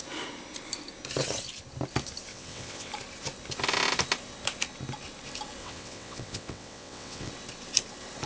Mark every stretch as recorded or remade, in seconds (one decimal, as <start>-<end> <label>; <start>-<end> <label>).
0.0-2.3 recorded; 2.3-2.9 remade; 2.9-5.6 recorded; 5.6-7.3 remade; 7.3-8.3 recorded

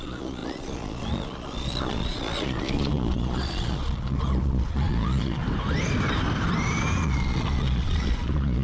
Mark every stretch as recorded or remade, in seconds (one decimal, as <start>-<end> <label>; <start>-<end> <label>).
0.0-5.4 remade; 5.4-7.0 recorded; 7.0-8.6 remade

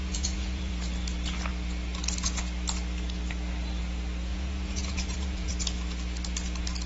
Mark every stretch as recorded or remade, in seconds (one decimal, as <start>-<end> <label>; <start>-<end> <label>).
0.0-0.7 remade; 0.7-4.3 recorded; 4.3-5.5 remade; 5.5-6.9 recorded